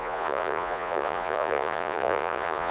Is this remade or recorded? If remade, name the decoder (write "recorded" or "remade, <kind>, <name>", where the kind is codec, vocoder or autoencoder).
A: remade, vocoder, Vocos